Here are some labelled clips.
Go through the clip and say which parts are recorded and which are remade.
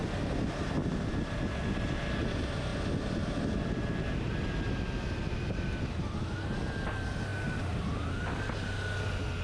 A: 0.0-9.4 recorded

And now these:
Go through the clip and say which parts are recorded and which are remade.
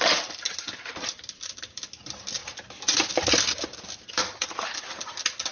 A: 0.0-5.5 recorded